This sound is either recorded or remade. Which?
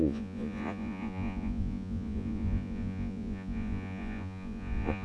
remade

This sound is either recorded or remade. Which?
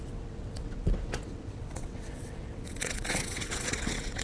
remade